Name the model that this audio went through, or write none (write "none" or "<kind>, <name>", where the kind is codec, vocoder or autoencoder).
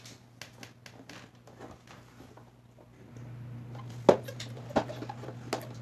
none